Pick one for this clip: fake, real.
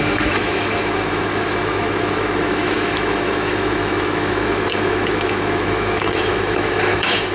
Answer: fake